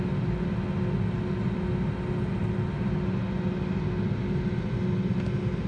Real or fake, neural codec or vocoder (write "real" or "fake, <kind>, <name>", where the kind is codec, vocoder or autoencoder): real